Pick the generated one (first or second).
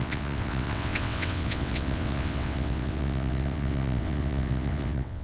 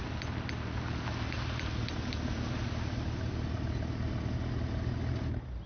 first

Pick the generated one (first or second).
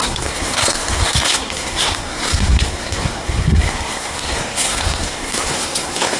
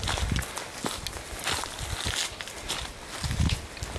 first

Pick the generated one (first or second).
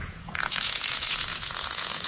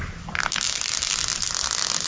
first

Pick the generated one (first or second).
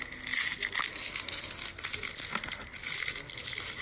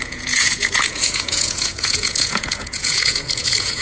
second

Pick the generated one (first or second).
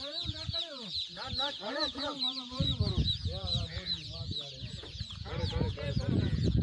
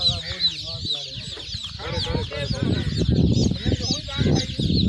first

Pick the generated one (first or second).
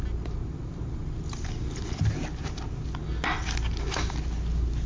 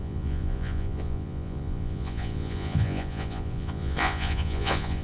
second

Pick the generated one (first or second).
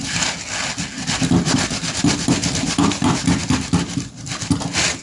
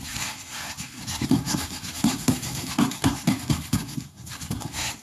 second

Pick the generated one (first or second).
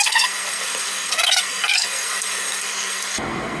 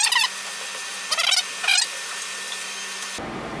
first